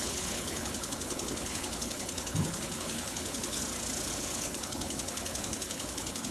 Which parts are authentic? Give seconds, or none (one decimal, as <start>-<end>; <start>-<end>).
3.6-4.1

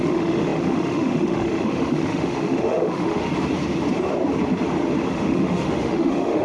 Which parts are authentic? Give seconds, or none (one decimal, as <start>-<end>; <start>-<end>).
3.3-5.1